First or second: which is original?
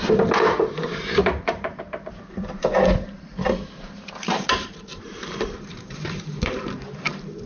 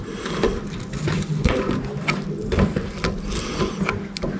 second